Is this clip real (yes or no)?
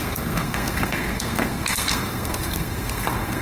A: no